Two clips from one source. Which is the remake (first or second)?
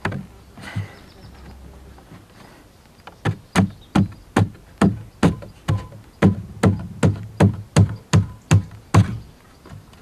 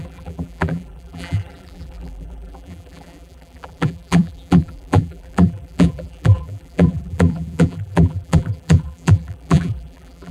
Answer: second